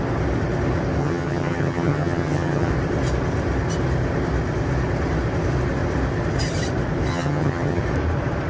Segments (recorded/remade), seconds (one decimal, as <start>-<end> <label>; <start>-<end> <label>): 0.0-1.0 recorded; 1.0-2.7 remade; 2.7-7.1 recorded; 7.1-7.8 remade; 7.8-8.5 recorded